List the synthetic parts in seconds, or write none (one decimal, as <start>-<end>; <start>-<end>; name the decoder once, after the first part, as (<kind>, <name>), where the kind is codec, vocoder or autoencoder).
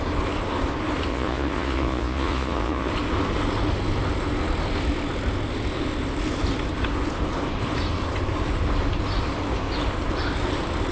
1.1-2.9 (vocoder, Vocos)